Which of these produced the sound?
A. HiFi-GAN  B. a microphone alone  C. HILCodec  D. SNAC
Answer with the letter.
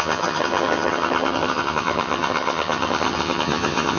A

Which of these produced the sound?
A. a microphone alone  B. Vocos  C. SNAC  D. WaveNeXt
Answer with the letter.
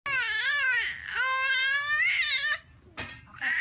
A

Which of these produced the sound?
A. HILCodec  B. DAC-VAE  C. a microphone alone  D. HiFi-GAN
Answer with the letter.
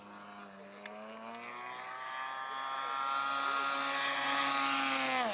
C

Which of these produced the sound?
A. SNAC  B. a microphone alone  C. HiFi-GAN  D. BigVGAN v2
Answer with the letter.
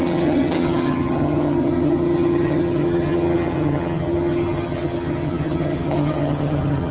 C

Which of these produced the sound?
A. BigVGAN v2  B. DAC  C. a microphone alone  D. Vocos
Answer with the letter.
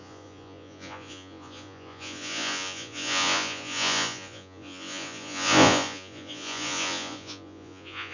D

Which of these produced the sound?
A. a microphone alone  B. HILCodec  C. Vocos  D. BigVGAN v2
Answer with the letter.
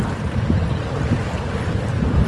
A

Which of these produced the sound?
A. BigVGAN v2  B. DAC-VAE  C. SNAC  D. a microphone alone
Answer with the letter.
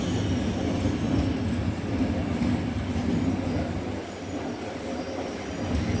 D